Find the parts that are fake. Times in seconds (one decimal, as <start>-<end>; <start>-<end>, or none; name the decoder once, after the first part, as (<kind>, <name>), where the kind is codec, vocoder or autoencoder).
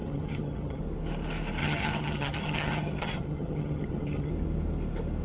0.0-0.8 (vocoder, HiFi-GAN); 1.6-4.3